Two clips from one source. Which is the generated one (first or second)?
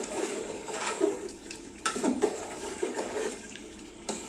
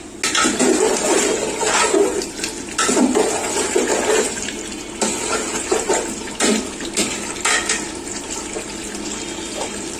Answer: first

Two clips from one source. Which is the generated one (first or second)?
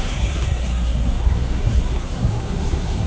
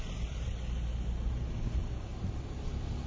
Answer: first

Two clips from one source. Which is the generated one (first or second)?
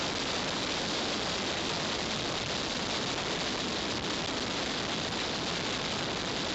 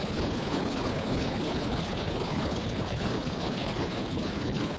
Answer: second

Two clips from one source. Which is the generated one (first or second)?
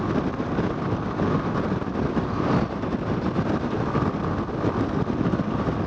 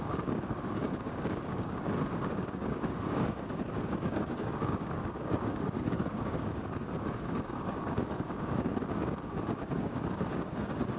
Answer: second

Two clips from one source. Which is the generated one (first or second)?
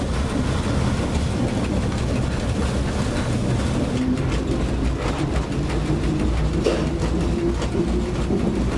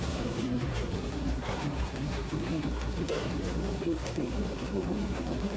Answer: second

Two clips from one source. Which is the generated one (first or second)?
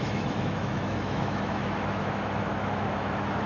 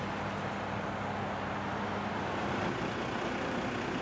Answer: first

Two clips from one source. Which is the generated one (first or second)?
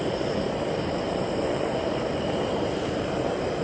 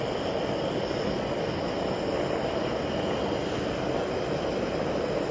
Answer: first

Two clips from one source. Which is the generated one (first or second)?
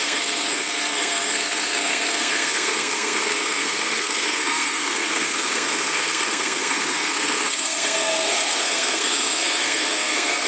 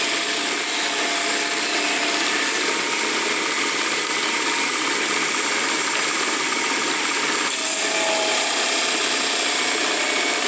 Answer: first